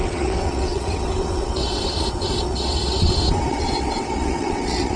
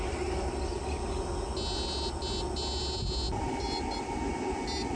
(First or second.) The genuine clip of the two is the second